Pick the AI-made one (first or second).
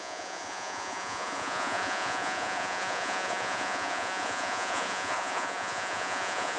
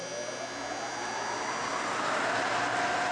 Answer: first